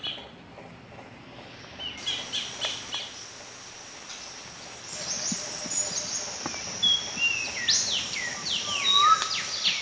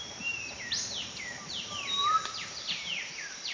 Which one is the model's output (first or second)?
second